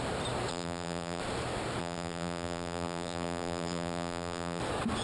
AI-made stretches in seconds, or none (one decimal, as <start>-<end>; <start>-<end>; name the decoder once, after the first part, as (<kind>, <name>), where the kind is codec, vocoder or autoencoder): 0.5-1.2 (vocoder, BigVGAN v2); 1.8-4.6